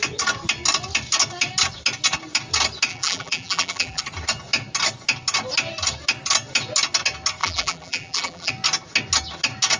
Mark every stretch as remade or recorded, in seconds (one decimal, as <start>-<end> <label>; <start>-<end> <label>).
0.0-2.9 recorded; 2.9-4.0 remade; 4.0-7.4 recorded; 7.4-8.5 remade; 8.5-9.8 recorded